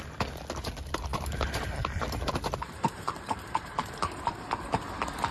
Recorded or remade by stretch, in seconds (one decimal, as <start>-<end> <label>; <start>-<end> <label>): 0.0-1.1 recorded; 1.1-4.3 remade; 4.3-5.3 recorded